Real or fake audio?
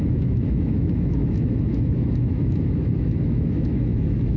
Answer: fake